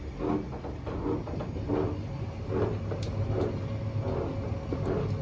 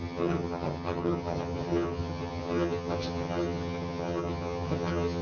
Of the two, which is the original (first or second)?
first